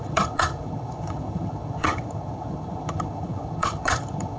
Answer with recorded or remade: remade